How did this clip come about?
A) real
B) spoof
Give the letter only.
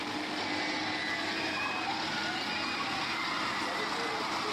A